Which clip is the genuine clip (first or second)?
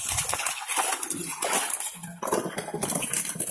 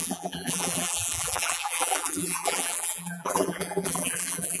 first